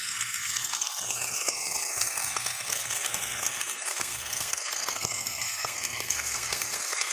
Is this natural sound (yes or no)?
no